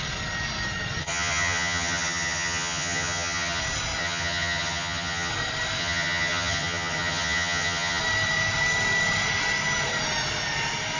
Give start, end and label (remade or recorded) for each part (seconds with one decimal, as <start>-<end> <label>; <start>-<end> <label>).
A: 0.0-1.0 recorded; 1.0-3.6 remade; 3.6-4.0 recorded; 4.0-5.3 remade; 5.3-5.8 recorded; 5.8-8.0 remade; 8.0-11.0 recorded